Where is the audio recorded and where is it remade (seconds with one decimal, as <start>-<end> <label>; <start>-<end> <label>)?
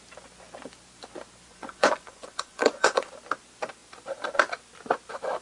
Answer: 0.0-1.5 recorded; 1.5-3.1 remade; 3.1-5.4 recorded